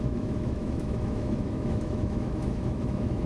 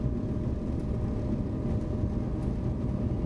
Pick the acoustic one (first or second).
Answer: second